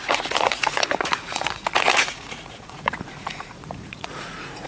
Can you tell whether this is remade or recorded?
remade